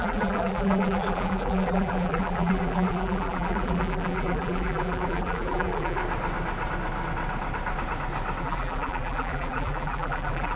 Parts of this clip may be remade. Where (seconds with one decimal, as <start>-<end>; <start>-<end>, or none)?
0.0-6.0; 8.4-10.6